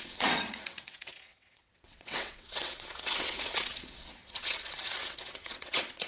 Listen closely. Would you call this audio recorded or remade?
remade